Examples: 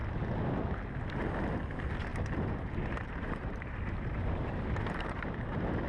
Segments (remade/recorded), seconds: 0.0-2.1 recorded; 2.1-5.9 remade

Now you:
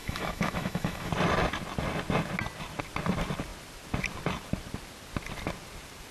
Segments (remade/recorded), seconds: 0.0-1.1 remade; 1.1-6.1 recorded

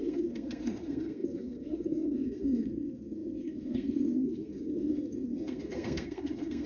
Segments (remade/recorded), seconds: 0.0-6.7 remade

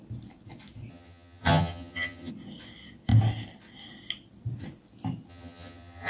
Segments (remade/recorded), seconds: 0.0-0.9 recorded; 0.9-2.3 remade; 2.3-5.3 recorded; 5.3-6.1 remade